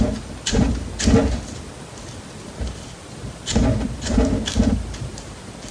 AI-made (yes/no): no